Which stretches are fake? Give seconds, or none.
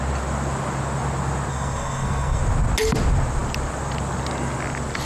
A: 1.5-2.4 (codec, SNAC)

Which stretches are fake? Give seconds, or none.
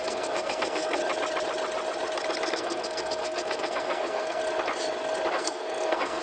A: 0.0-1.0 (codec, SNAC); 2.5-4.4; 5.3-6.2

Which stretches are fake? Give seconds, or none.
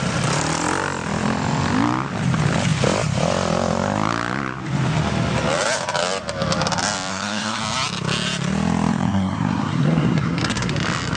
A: 7.1-7.6 (codec, SNAC); 8.9-10.7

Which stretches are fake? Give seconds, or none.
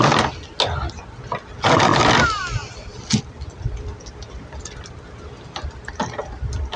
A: none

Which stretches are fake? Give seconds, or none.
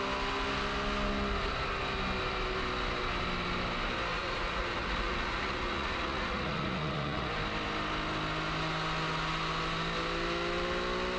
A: 4.1-7.3 (vocoder, Vocos)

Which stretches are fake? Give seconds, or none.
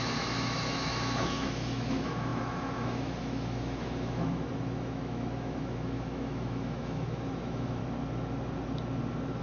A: 0.0-7.8 (autoencoder, DAC-VAE)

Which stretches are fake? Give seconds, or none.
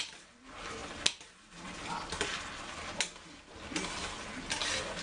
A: none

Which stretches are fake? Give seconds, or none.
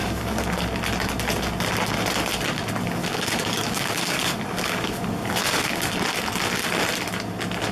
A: 0.0-0.6 (codec, DAC); 3.0-5.9